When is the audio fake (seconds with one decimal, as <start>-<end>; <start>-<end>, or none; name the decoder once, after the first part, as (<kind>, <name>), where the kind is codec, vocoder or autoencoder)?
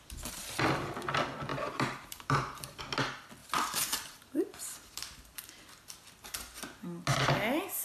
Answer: 1.5-2.8 (vocoder, BigVGAN v2); 3.4-5.5